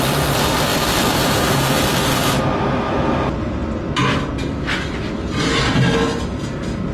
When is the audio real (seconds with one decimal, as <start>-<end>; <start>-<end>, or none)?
0.0-6.9